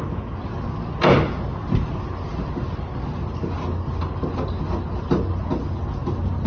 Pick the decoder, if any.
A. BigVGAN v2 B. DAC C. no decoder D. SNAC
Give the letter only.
C